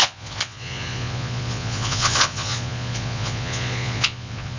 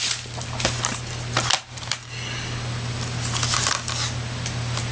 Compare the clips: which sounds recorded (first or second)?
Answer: second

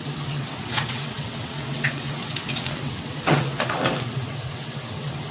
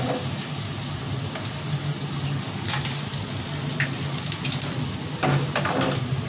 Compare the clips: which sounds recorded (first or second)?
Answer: second